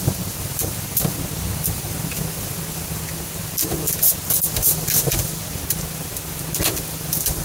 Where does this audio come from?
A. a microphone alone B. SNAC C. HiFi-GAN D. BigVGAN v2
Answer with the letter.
A